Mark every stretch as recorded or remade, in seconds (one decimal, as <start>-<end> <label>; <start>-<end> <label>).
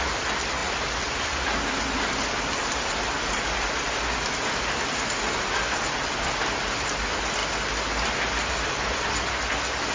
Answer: 0.0-9.9 recorded